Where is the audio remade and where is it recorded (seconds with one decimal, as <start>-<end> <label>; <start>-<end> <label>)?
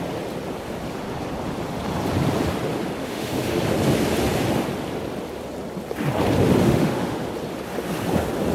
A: 0.0-3.0 recorded; 3.0-3.6 remade; 3.6-6.6 recorded; 6.6-7.2 remade; 7.2-8.5 recorded